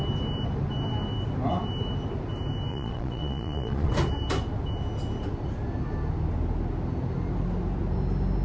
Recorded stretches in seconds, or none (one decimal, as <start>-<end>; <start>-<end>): 0.0-2.7; 3.9-8.4